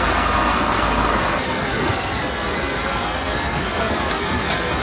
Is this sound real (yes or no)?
no